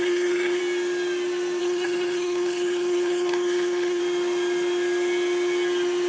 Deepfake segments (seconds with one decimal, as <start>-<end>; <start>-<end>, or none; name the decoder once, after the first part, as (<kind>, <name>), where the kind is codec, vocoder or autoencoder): 0.0-0.6 (codec, SNAC); 1.6-4.0